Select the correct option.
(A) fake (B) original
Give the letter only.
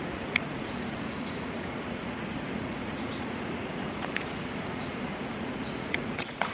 A